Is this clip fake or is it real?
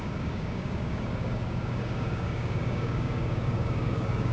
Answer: fake